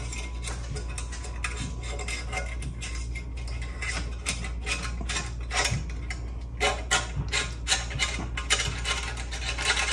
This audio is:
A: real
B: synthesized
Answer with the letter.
A